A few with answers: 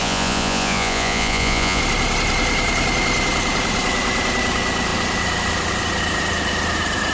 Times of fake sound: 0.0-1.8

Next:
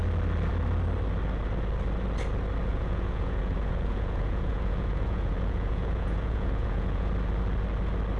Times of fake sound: 2.7-7.1

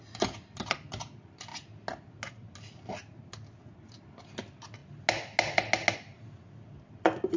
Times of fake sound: none